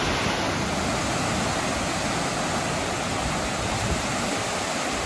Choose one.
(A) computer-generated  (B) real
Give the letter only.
B